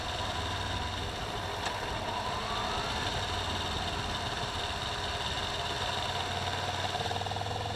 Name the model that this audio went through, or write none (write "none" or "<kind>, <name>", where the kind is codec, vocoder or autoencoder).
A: none